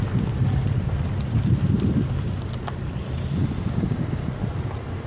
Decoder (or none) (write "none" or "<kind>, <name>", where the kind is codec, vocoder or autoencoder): vocoder, BigVGAN v2